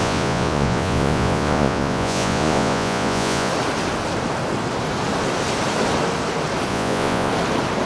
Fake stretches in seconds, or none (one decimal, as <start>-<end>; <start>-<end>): 0.0-3.5; 6.7-7.3